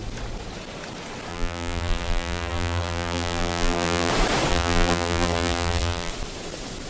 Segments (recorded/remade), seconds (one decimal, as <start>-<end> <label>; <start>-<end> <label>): 0.0-1.3 recorded; 1.3-4.1 remade; 4.1-4.5 recorded; 4.5-6.1 remade; 6.1-6.9 recorded